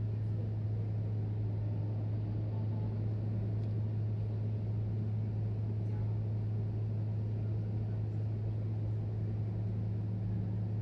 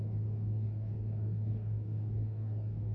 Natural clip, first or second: first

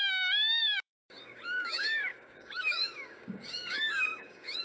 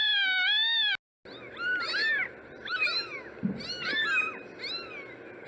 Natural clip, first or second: second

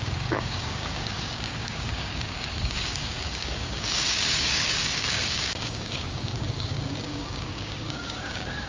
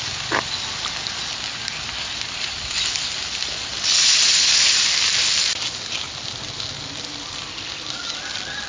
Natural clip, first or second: second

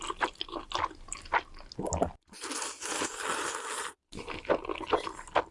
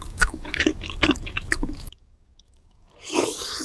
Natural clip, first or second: first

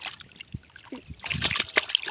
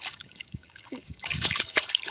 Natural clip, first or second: first